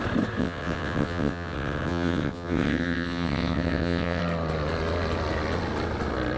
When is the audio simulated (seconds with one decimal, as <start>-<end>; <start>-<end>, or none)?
0.4-4.2